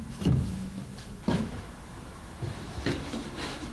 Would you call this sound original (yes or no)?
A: no